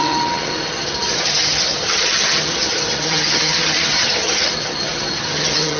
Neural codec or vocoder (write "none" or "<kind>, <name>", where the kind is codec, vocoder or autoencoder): vocoder, HiFi-GAN